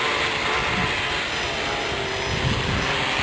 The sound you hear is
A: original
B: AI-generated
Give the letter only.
A